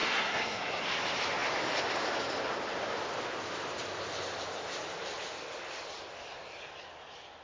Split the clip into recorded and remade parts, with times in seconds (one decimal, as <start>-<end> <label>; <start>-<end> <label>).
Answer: 0.0-0.8 remade; 0.8-7.4 recorded